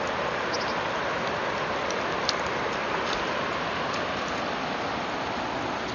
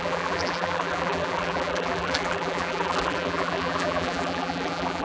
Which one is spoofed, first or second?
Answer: second